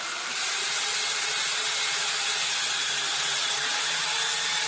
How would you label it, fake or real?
real